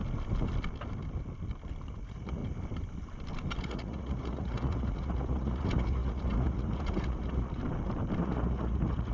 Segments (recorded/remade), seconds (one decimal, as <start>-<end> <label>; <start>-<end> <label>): 0.0-2.0 recorded; 2.0-2.4 remade; 2.4-3.6 recorded; 3.6-7.6 remade; 7.6-8.2 recorded; 8.2-9.1 remade